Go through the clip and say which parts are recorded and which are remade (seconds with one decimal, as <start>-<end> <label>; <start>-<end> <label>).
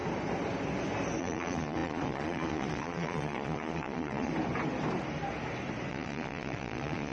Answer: 0.0-1.2 recorded; 1.2-4.3 remade; 4.3-5.9 recorded; 5.9-7.1 remade